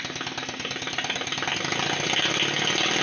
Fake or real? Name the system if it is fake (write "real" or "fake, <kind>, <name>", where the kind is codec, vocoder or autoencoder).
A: real